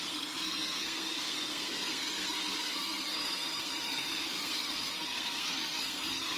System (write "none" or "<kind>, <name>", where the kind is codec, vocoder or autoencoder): codec, SNAC